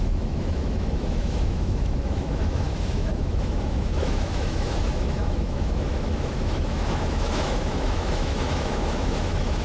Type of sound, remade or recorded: remade